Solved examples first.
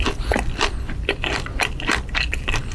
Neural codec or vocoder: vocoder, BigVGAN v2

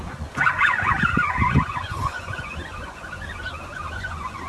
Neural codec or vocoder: vocoder, Vocos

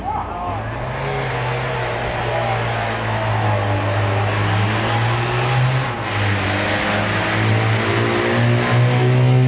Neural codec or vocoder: none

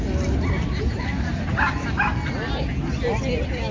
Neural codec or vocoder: none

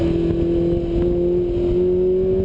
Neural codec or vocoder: none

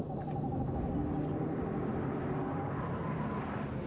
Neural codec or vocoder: none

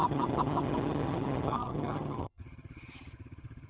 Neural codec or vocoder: vocoder, HiFi-GAN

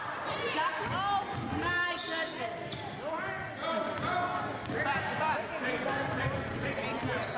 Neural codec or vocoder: none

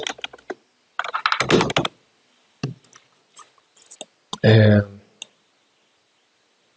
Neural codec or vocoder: none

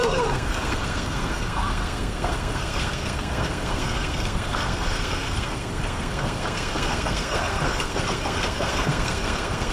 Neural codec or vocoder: codec, SNAC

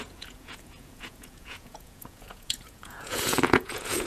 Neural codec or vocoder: vocoder, Vocos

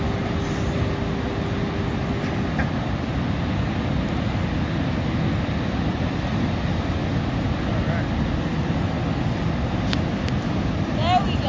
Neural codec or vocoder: none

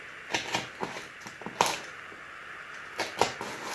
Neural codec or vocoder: none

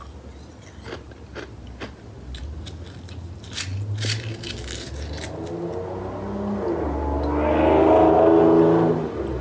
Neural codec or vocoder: none